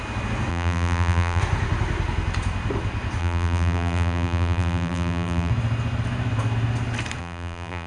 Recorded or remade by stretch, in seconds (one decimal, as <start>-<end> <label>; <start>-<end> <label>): 0.0-0.5 recorded; 0.5-1.4 remade; 1.4-3.2 recorded; 3.2-5.5 remade; 5.5-7.2 recorded; 7.2-7.9 remade

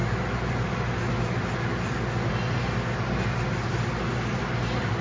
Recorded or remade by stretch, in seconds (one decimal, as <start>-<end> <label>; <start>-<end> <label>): 0.0-5.0 recorded

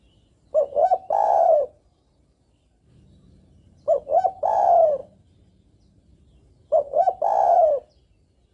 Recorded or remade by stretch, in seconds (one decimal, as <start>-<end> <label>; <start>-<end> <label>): 0.0-0.8 recorded; 0.8-4.6 remade; 4.6-5.0 recorded; 5.0-7.2 remade; 7.2-8.5 recorded

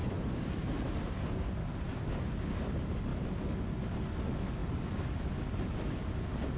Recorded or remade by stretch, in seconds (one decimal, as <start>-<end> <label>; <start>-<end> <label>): 0.0-2.1 remade; 2.1-6.6 recorded

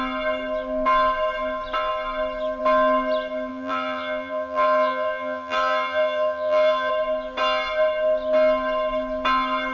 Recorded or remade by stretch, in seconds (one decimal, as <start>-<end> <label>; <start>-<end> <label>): 0.0-3.5 recorded; 3.5-6.9 remade; 6.9-9.7 recorded